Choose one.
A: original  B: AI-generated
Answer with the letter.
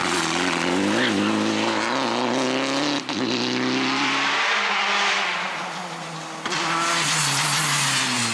A